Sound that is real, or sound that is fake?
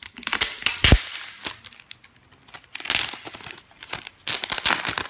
real